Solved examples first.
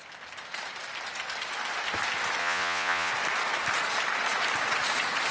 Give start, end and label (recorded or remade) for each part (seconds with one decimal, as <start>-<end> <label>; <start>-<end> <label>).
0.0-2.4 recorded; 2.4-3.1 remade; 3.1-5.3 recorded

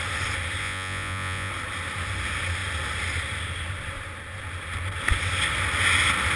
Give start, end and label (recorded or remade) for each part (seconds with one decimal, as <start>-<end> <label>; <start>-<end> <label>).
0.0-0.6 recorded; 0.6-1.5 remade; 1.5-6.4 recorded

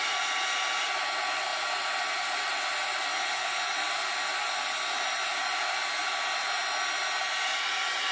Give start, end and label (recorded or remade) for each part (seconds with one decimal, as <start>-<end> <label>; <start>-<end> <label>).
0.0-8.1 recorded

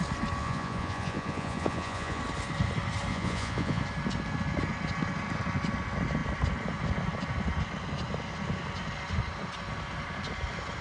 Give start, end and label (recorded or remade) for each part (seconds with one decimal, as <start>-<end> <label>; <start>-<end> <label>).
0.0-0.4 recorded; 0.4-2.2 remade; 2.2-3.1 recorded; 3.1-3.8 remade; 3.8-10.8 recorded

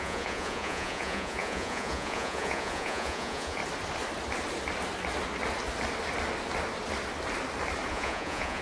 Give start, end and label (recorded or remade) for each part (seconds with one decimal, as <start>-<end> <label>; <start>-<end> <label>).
0.0-3.6 remade; 3.6-7.9 recorded; 7.9-8.6 remade